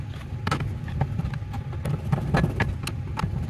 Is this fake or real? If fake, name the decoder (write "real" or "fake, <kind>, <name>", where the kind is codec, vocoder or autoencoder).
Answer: real